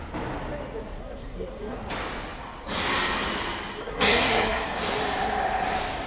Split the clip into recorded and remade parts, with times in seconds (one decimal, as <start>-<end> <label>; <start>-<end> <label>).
0.0-1.0 recorded; 1.0-1.8 remade; 1.8-3.8 recorded; 3.8-4.7 remade; 4.7-6.1 recorded